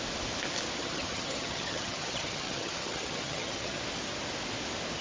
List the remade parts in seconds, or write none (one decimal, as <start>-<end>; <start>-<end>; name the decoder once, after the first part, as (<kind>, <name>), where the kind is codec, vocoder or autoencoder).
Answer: 0.8-3.8 (vocoder, HiFi-GAN)